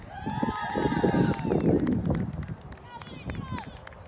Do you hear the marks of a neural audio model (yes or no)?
no